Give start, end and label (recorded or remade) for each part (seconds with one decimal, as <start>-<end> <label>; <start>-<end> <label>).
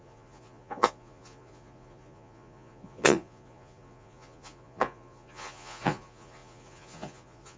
0.0-7.6 remade